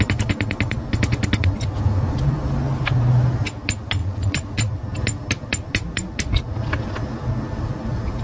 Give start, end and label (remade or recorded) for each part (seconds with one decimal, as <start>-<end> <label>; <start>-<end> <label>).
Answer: 0.0-4.0 recorded; 4.0-4.7 remade; 4.7-8.2 recorded